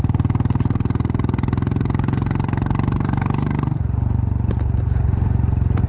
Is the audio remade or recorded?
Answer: recorded